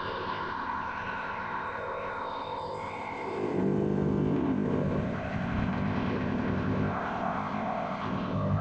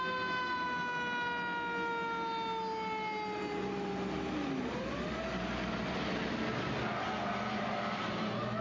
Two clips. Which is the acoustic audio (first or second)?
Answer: second